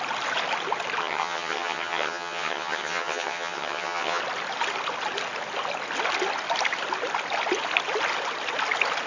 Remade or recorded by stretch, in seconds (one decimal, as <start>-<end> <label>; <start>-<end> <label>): 0.0-1.0 recorded; 1.0-4.2 remade; 4.2-9.1 recorded